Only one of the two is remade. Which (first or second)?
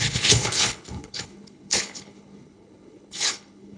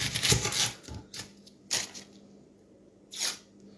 first